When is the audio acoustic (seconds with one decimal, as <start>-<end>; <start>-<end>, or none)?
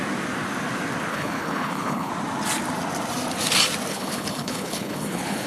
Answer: 0.0-1.1; 2.1-3.9